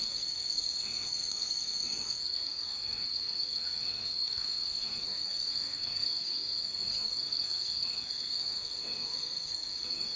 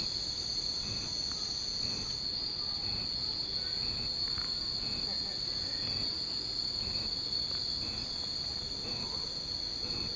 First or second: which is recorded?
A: second